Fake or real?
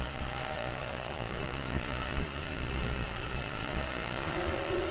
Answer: fake